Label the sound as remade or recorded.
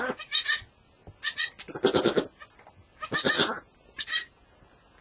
recorded